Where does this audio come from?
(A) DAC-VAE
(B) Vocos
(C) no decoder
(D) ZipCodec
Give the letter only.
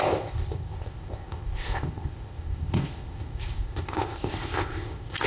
D